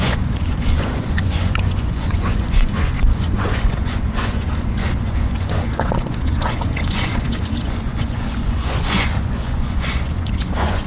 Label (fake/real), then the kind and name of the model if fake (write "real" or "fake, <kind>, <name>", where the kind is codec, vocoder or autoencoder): fake, vocoder, Vocos